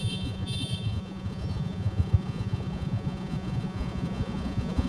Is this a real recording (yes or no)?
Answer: no